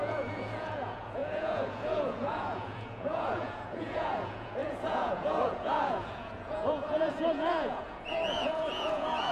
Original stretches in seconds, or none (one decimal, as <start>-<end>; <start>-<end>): none